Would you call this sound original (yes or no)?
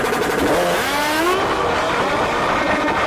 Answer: yes